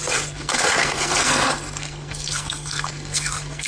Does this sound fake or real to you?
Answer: fake